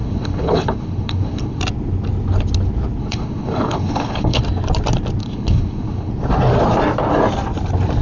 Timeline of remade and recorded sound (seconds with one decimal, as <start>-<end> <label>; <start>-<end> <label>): 0.0-1.6 remade; 1.6-3.0 recorded; 3.0-4.4 remade; 4.4-5.2 recorded; 5.2-6.1 remade; 6.1-8.0 recorded

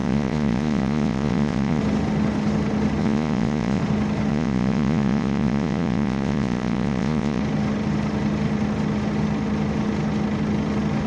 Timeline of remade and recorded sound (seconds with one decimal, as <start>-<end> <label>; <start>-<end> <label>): 0.0-1.8 remade; 1.8-3.0 recorded; 3.0-3.8 remade; 3.8-4.3 recorded; 4.3-7.4 remade; 7.4-11.1 recorded